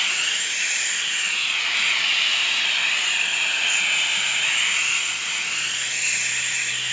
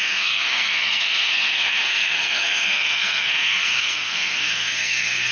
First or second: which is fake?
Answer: second